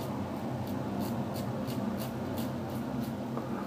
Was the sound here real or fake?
real